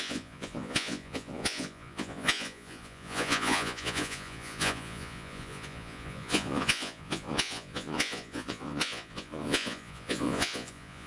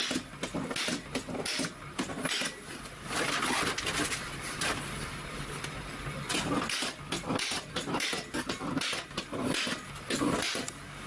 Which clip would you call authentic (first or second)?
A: second